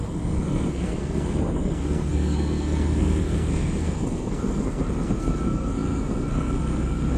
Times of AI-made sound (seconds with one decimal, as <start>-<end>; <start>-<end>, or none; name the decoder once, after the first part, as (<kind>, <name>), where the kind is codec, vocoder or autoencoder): 0.0-7.2 (codec, SNAC)